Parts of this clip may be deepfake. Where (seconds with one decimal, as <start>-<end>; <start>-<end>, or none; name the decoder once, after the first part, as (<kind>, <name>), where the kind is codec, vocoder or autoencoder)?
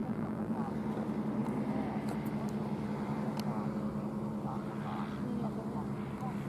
0.0-0.7 (vocoder, BigVGAN v2)